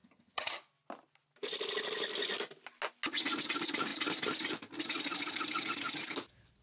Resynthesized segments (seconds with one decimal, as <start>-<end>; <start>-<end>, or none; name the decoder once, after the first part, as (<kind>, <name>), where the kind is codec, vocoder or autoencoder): 0.0-0.6 (vocoder, HiFi-GAN)